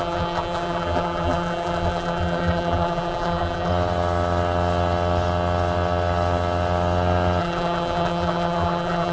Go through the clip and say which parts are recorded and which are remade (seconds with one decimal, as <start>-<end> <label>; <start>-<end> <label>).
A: 0.0-3.7 remade; 3.7-7.4 recorded; 7.4-9.1 remade